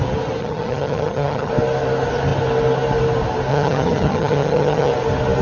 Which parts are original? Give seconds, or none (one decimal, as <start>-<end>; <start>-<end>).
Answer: 0.0-0.4; 1.5-3.5; 4.9-5.4